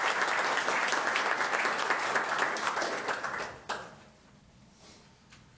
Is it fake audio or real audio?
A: real